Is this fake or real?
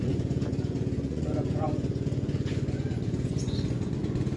fake